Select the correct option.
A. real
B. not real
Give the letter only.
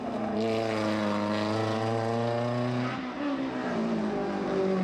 A